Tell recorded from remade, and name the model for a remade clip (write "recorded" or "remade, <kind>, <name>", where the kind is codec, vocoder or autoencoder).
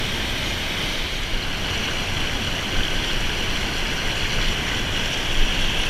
recorded